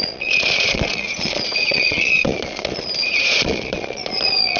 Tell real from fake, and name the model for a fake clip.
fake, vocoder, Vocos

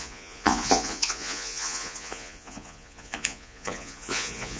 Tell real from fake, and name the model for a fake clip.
fake, vocoder, Vocos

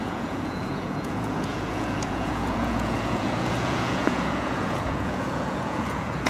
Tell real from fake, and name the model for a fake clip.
fake, vocoder, Vocos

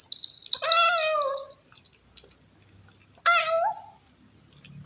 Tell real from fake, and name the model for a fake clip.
real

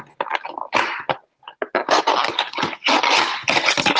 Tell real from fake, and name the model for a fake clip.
real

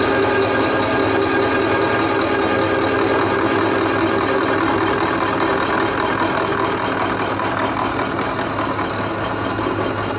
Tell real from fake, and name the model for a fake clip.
real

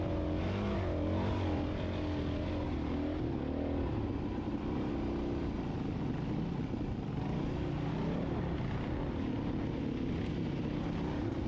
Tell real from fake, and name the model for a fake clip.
real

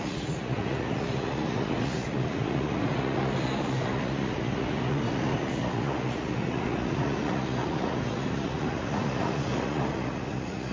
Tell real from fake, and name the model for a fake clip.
fake, vocoder, Vocos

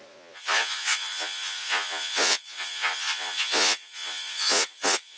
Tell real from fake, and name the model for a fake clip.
fake, vocoder, Vocos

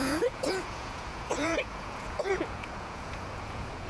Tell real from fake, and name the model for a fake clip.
fake, vocoder, Vocos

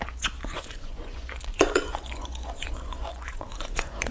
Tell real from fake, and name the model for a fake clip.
fake, vocoder, Vocos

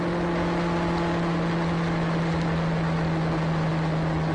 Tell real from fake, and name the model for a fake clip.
real